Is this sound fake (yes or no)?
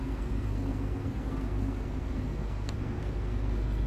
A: yes